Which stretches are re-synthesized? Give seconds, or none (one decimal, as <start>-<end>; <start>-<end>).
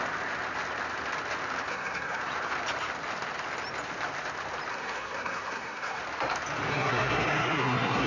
1.7-2.2; 4.7-6.0; 6.7-8.1